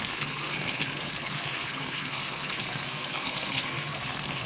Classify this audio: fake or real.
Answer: fake